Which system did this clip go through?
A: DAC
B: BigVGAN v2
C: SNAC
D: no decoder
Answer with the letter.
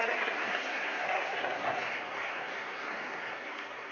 C